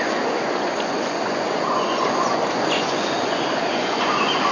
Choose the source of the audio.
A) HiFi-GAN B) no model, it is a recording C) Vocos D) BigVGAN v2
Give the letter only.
C